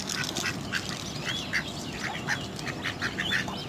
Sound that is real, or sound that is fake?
real